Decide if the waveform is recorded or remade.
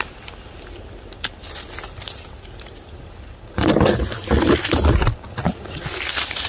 recorded